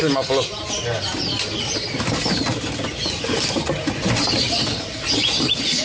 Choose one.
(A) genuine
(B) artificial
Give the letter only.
A